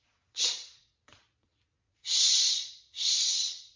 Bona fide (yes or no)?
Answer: no